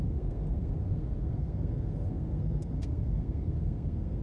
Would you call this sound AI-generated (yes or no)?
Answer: yes